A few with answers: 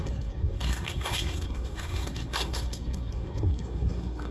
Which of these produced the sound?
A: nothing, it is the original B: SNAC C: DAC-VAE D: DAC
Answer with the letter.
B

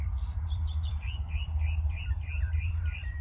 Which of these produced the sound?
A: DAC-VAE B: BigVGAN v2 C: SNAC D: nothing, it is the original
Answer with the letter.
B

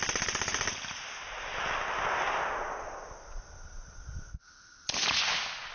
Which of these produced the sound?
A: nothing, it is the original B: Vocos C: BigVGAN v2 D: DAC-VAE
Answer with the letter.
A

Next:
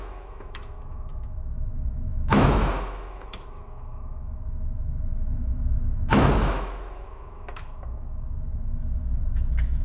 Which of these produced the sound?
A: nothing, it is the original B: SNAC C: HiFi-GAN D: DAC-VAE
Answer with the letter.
D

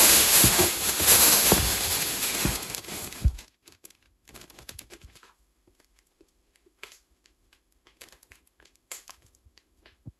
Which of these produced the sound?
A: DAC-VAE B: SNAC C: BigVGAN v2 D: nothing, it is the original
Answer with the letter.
A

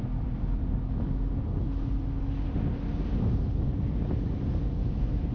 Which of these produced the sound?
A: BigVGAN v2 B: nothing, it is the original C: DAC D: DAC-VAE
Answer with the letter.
B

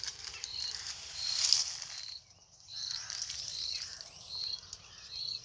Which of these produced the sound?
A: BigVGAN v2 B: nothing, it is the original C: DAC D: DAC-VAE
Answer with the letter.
A